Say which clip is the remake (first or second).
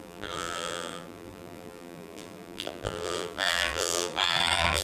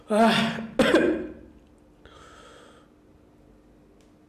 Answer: first